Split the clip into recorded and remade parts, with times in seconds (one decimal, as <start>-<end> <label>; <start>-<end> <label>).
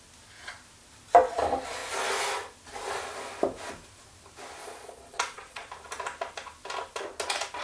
0.0-4.6 recorded; 4.6-5.7 remade; 5.7-7.6 recorded